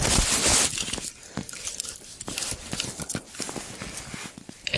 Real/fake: real